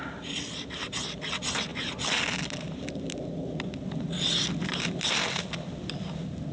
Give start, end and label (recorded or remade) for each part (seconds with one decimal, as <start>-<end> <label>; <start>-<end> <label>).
0.0-6.5 recorded